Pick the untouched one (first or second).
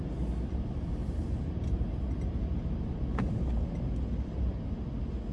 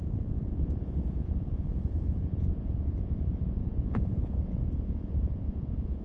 first